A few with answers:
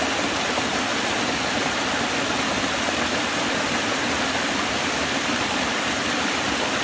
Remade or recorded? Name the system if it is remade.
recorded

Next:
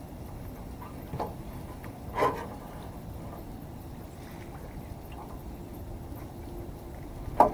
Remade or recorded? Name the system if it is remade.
recorded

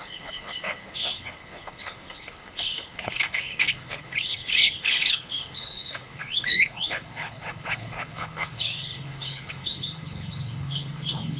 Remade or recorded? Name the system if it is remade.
remade, codec, HILCodec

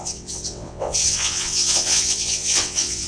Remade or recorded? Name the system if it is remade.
remade, vocoder, WaveNeXt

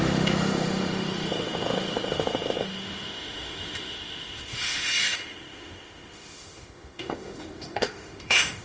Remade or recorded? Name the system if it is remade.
remade, autoencoder, DAC-VAE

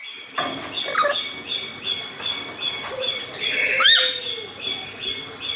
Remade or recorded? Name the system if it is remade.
recorded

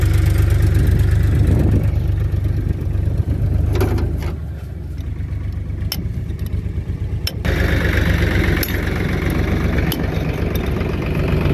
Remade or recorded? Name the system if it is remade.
recorded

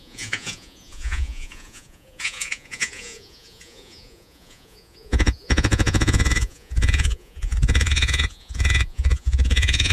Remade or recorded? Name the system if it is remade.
remade, vocoder, Vocos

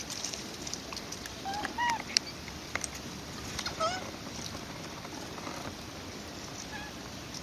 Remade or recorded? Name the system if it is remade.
remade, vocoder, BigVGAN v2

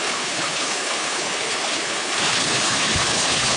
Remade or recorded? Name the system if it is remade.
remade, codec, HILCodec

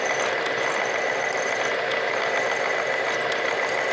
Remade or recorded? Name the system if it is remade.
recorded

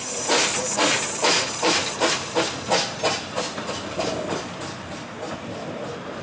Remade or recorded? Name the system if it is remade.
recorded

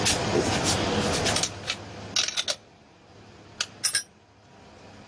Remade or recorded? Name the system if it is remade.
recorded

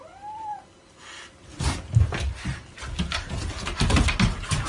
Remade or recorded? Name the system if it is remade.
recorded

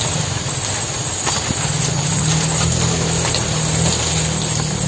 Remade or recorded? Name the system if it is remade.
recorded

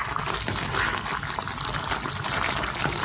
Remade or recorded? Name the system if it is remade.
recorded